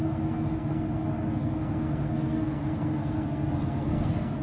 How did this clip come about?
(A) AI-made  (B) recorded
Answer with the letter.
A